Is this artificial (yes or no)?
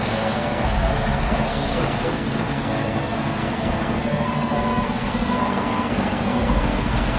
yes